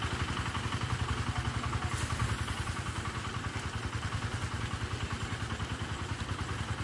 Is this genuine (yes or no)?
yes